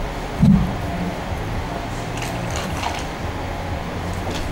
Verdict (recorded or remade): recorded